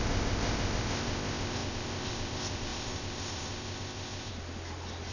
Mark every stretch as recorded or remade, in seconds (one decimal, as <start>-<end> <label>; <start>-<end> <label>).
0.0-4.3 remade; 4.3-5.1 recorded